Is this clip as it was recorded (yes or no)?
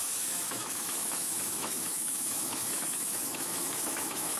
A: no